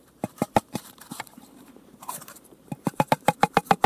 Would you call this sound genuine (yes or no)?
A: no